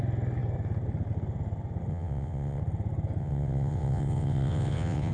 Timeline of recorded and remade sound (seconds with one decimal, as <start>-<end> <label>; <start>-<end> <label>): 0.0-1.9 recorded; 1.9-2.6 remade; 2.6-3.2 recorded; 3.2-5.1 remade